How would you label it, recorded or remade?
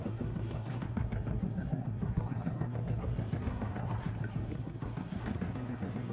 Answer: remade